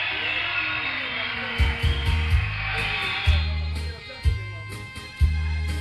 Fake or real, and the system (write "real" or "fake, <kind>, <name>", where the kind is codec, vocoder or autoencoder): real